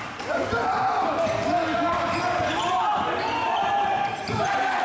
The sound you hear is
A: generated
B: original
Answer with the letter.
B